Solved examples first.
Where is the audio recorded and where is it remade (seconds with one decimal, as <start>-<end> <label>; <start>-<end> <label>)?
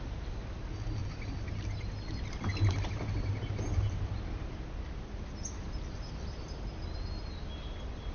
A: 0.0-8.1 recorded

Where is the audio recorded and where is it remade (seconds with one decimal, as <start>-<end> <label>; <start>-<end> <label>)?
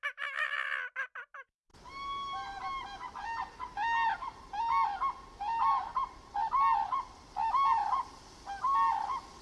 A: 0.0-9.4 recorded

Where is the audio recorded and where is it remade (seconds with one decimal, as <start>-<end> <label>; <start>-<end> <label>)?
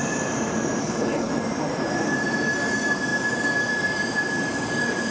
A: 0.0-0.8 recorded; 0.8-1.3 remade; 1.3-5.1 recorded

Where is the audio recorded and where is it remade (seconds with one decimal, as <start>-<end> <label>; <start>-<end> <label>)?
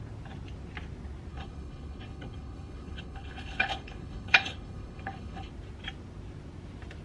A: 0.0-1.3 recorded; 1.3-5.5 remade; 5.5-7.0 recorded